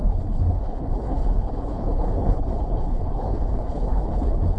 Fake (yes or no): yes